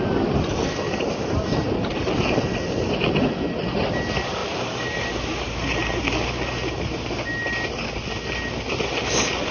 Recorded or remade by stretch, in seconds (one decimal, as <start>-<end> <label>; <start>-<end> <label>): 0.0-4.4 recorded; 4.4-6.0 remade; 6.0-9.5 recorded